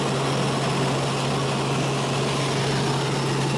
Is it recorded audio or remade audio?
recorded